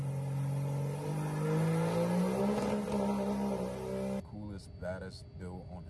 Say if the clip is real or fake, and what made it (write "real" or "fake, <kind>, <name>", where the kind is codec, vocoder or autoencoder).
real